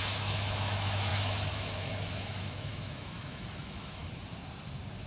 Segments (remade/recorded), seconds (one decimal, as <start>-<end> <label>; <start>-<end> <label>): 0.0-4.0 remade; 4.0-5.1 recorded